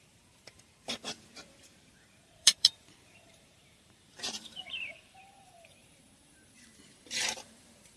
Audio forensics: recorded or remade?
remade